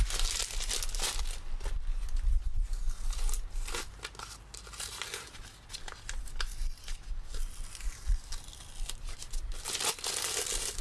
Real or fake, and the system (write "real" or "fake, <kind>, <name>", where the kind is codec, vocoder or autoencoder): real